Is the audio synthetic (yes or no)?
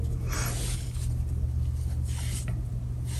no